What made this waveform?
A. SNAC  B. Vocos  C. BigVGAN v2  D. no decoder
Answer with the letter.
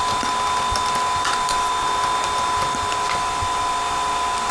D